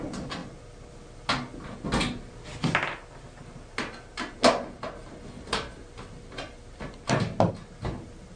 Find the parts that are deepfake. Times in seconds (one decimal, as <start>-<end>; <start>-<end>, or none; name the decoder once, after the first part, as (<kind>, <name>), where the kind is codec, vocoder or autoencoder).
none